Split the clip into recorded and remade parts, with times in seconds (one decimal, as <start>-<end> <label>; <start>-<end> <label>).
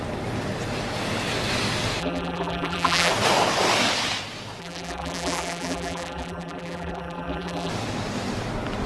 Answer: 0.0-2.0 recorded; 2.0-3.1 remade; 3.1-4.6 recorded; 4.6-7.7 remade; 7.7-8.9 recorded